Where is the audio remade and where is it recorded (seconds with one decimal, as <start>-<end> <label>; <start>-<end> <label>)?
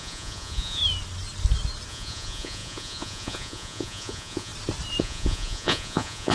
0.0-0.8 remade; 0.8-1.9 recorded; 1.9-4.5 remade; 4.5-5.0 recorded; 5.0-6.3 remade